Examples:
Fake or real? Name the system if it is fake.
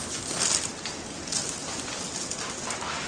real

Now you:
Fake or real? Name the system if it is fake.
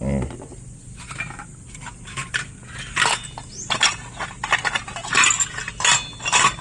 real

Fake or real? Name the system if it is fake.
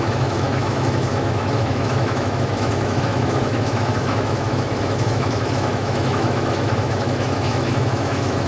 fake, autoencoder, DAC-VAE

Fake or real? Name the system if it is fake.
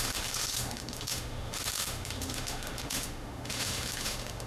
fake, autoencoder, DAC-VAE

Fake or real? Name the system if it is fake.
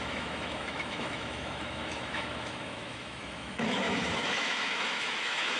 fake, autoencoder, DAC-VAE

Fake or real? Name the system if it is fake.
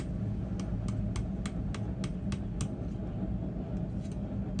real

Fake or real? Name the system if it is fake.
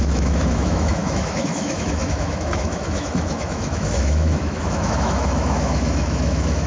fake, autoencoder, DAC-VAE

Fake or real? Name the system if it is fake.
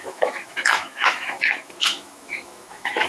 fake, autoencoder, DAC-VAE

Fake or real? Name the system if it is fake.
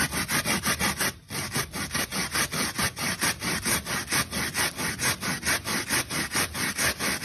real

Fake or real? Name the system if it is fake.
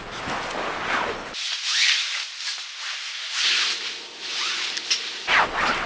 real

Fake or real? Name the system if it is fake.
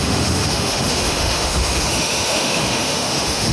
fake, autoencoder, DAC-VAE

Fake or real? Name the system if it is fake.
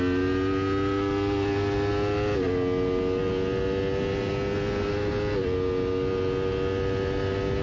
real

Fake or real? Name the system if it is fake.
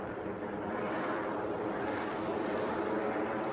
real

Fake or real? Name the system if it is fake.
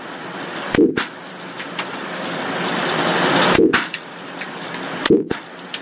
real